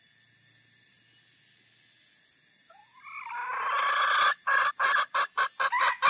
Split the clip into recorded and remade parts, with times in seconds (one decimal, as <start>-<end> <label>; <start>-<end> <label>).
0.0-6.1 recorded